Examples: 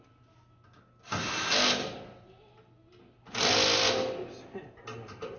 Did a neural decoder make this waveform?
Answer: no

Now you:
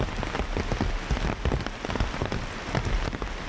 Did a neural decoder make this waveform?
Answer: no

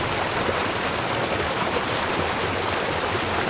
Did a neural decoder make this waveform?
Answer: no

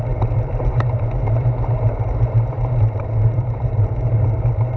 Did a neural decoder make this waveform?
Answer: yes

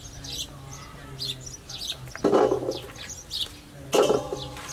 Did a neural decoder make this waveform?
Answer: no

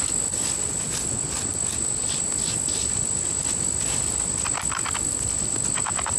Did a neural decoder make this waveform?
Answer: no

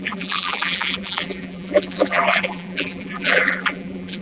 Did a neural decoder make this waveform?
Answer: yes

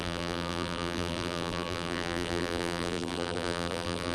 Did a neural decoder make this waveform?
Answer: yes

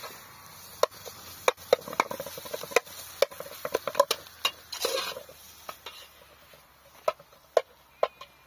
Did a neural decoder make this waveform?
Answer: no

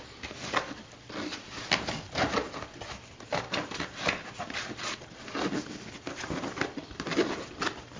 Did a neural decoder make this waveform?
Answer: no